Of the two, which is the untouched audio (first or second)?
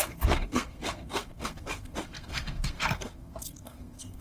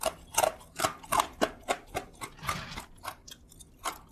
second